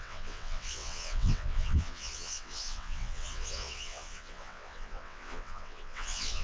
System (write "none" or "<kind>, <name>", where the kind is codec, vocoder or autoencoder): vocoder, WaveNeXt